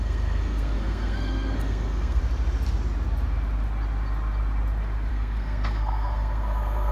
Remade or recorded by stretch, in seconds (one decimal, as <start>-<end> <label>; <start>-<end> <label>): 0.0-2.2 remade; 2.2-5.1 recorded; 5.1-6.9 remade